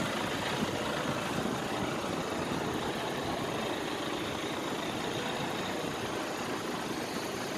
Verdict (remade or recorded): recorded